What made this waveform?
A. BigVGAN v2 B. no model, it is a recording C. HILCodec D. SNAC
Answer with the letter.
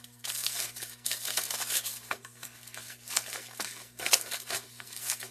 D